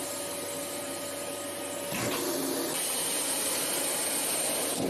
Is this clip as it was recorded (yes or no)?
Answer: yes